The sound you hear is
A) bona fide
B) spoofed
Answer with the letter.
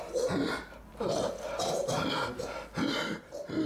A